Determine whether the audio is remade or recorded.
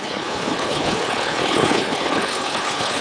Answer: remade